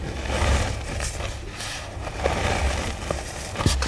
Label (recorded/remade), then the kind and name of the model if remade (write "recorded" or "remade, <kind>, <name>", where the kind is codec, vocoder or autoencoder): recorded